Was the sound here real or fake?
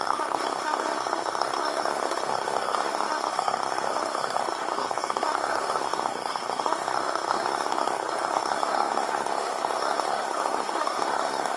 fake